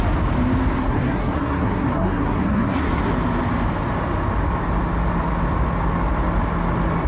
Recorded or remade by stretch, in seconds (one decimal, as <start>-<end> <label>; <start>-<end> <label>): 0.0-0.8 recorded; 0.8-3.1 remade; 3.1-7.1 recorded